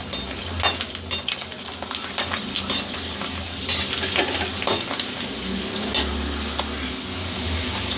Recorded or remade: recorded